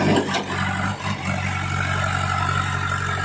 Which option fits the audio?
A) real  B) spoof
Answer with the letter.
A